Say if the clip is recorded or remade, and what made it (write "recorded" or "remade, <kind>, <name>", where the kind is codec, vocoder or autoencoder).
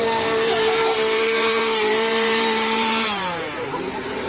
remade, vocoder, BigVGAN v2